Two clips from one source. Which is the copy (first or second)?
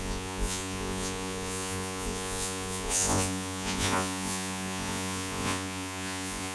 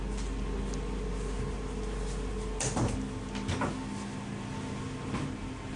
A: first